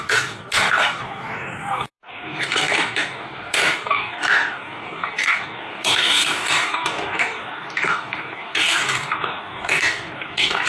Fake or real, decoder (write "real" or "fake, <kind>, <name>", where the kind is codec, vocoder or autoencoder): fake, codec, DAC